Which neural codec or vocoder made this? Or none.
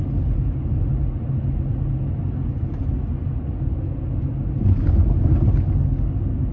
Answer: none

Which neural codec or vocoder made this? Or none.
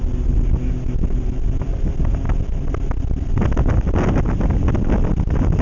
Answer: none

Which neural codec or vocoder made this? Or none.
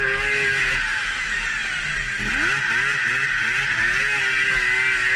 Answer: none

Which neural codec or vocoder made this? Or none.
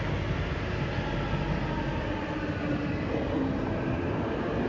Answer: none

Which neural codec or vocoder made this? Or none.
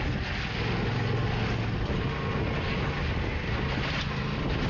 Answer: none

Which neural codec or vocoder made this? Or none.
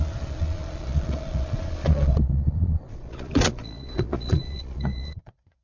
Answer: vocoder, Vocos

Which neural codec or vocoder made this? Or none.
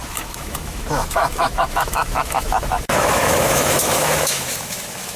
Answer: autoencoder, DAC-VAE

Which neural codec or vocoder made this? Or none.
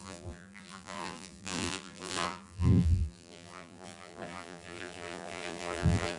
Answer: vocoder, BigVGAN v2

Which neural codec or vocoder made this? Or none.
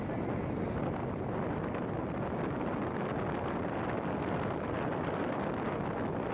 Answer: none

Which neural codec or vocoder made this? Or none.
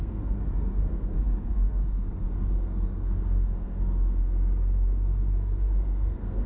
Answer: codec, SNAC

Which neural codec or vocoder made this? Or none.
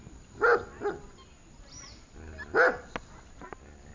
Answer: none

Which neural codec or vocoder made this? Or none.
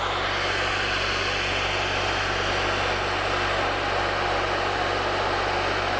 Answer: none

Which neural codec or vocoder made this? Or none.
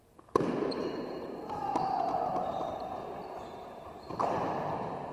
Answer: none